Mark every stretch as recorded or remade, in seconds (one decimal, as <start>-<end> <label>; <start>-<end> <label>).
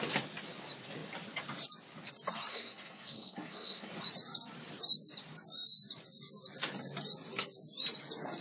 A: 0.0-2.5 recorded; 2.5-3.9 remade; 3.9-8.4 recorded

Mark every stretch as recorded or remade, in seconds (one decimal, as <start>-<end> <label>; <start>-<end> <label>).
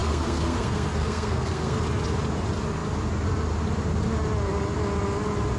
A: 0.0-1.8 remade; 1.8-5.6 recorded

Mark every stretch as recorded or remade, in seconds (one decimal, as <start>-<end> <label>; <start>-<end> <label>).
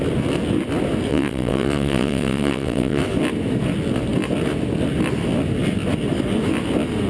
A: 0.0-1.1 recorded; 1.1-3.0 remade; 3.0-7.1 recorded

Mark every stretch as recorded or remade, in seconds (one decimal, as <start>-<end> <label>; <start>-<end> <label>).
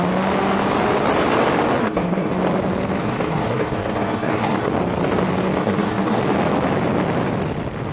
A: 0.0-1.8 recorded; 1.8-2.3 remade; 2.3-3.0 recorded; 3.0-4.7 remade; 4.7-5.6 recorded; 5.6-6.2 remade; 6.2-7.9 recorded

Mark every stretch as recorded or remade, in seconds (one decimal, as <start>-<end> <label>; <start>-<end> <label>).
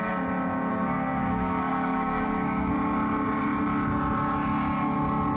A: 0.0-0.7 recorded; 0.7-2.7 remade; 2.7-5.4 recorded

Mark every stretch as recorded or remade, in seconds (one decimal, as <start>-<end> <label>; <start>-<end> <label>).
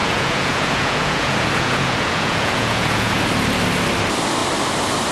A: 0.0-3.1 remade; 3.1-5.1 recorded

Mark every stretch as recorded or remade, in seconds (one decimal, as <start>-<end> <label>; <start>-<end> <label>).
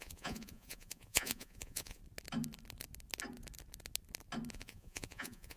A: 0.0-2.0 remade; 2.0-4.5 recorded; 4.5-5.6 remade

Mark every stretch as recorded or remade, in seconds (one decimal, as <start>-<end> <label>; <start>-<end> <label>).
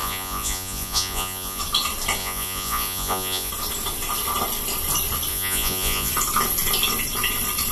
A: 0.0-1.6 remade; 1.6-2.2 recorded; 2.2-3.5 remade; 3.5-5.3 recorded; 5.3-6.1 remade; 6.1-7.7 recorded